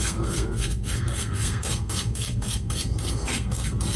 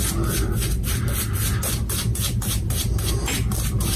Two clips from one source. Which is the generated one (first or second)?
first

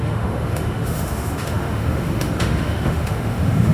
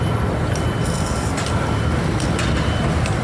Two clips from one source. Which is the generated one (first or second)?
first